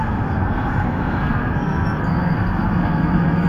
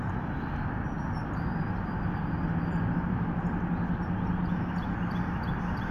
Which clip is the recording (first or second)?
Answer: second